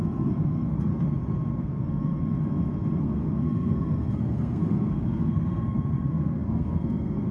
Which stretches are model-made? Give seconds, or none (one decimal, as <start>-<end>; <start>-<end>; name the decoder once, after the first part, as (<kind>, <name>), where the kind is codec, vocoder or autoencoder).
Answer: 0.0-0.9 (codec, SNAC); 1.6-2.2; 3.0-7.3